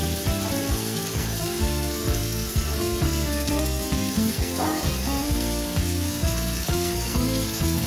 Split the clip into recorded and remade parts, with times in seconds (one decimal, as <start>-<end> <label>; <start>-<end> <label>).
0.0-0.7 recorded; 0.7-7.9 remade